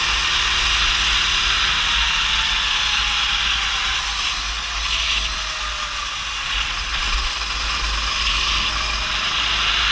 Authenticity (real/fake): real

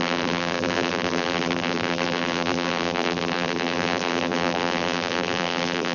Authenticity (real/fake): fake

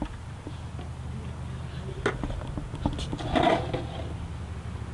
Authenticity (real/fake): real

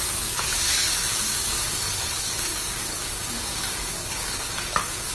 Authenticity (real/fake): fake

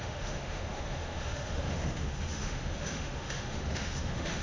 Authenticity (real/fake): fake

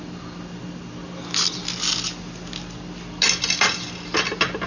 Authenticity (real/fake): real